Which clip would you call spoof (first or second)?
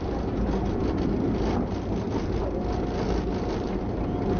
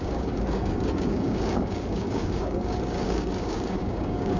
second